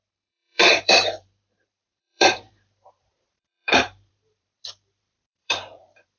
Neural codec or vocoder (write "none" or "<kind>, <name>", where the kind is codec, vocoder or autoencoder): vocoder, BigVGAN v2